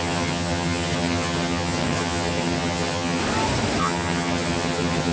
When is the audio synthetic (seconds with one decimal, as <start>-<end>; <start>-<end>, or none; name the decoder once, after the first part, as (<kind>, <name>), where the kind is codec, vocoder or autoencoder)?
0.0-3.2 (vocoder, HiFi-GAN); 3.8-5.1